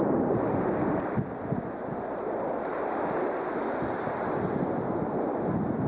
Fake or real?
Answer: real